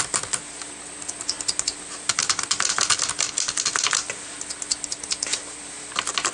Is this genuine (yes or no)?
yes